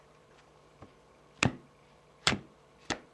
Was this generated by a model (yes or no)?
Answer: yes